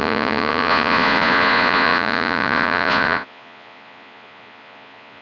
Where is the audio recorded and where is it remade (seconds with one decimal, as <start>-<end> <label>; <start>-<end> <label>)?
0.0-5.2 remade